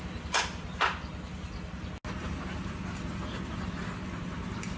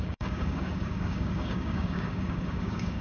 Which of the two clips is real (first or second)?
first